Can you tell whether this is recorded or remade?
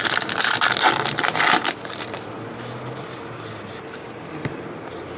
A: recorded